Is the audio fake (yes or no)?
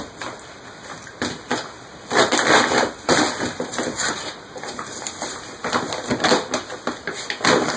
no